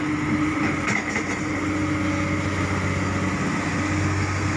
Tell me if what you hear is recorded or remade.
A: recorded